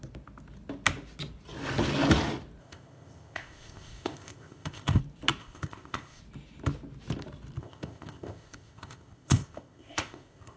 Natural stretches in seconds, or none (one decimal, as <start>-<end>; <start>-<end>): 0.0-2.6; 5.0-5.4; 6.2-7.6